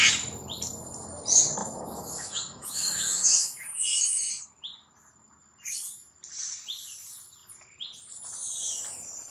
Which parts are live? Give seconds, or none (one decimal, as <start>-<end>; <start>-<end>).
0.0-1.6; 4.3-9.3